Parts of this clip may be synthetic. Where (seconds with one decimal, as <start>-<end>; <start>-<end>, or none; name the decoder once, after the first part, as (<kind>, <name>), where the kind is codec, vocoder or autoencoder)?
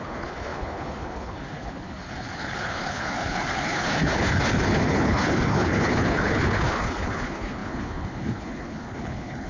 0.0-9.5 (codec, HILCodec)